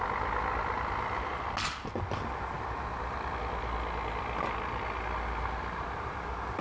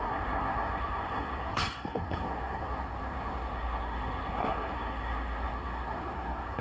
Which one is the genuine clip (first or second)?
first